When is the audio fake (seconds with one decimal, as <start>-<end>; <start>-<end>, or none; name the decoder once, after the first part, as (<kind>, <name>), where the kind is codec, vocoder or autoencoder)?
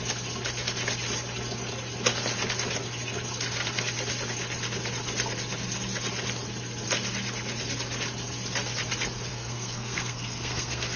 9.3-11.0 (codec, SNAC)